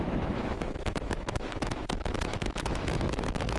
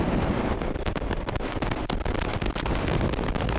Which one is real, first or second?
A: second